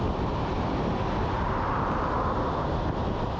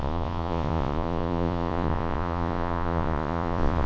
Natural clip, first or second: first